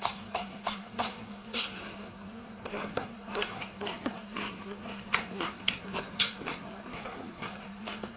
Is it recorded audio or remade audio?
remade